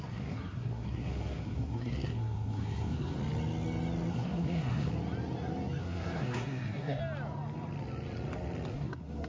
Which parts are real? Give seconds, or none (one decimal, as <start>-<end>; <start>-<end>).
3.2-4.1; 4.9-5.8; 7.0-8.7